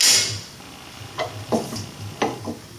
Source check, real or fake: real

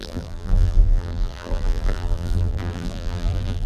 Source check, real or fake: fake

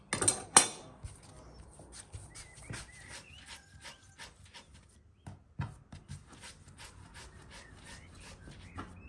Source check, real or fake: real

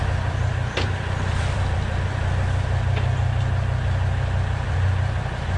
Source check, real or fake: fake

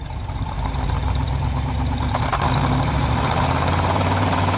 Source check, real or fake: fake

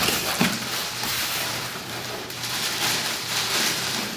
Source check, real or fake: fake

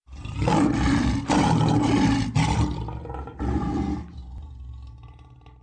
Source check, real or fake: real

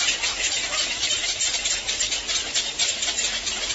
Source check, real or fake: real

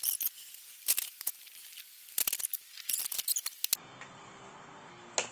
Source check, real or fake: real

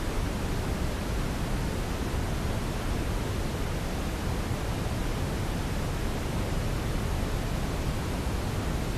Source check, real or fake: real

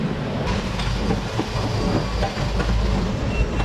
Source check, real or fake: real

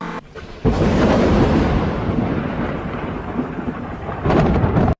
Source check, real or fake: fake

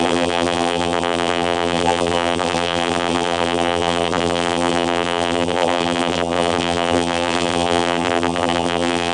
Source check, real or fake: fake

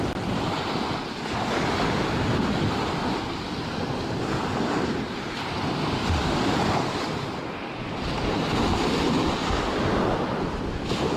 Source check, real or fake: real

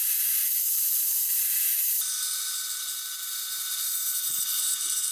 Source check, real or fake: fake